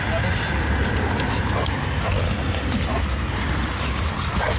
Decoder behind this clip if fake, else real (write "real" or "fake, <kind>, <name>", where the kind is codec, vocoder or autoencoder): real